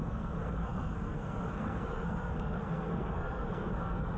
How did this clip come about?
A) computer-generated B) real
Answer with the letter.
A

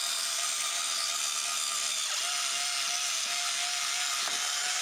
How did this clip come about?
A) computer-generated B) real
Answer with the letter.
B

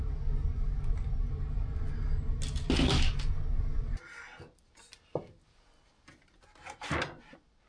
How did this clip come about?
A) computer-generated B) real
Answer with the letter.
B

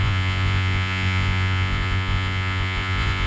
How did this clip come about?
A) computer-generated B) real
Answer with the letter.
A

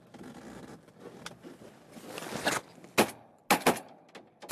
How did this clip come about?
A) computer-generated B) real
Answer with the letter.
B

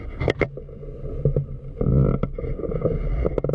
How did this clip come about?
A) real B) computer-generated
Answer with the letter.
A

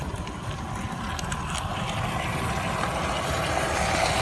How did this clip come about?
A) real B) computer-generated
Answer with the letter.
A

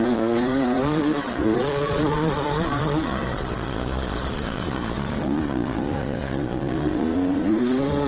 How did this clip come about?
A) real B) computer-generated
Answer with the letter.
B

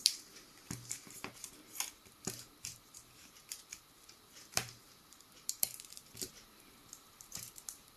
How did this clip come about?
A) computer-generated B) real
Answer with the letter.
A